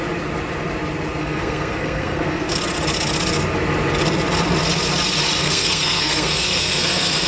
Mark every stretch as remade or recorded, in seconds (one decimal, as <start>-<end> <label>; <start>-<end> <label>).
0.0-1.2 recorded; 1.2-2.6 remade; 2.6-5.4 recorded; 5.4-7.3 remade